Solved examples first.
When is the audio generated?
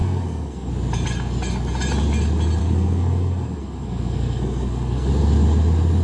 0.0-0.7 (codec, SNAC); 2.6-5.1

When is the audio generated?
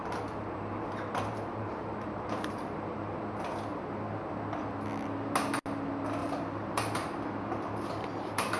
0.0-3.2 (vocoder, BigVGAN v2); 3.7-4.3; 6.2-8.6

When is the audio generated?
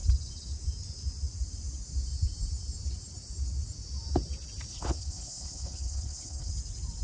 4.7-6.5 (codec, HILCodec)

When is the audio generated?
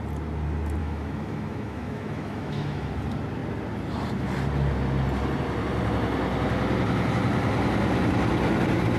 0.8-2.9 (autoencoder, DAC-VAE)